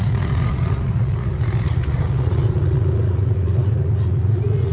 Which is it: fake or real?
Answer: fake